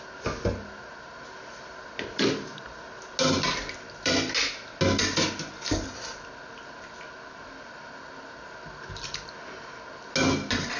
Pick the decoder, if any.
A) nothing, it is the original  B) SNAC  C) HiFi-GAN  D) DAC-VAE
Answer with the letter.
A